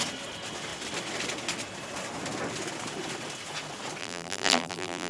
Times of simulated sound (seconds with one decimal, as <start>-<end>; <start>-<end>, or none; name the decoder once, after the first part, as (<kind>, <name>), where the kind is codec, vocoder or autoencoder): 4.0-5.1 (vocoder, BigVGAN v2)